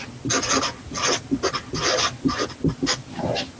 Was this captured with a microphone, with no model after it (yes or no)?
yes